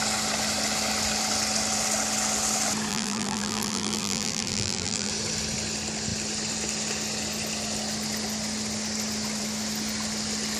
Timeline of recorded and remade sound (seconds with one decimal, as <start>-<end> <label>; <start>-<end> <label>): 0.0-2.9 recorded; 2.9-5.1 remade; 5.1-10.6 recorded